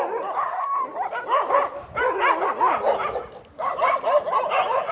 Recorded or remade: recorded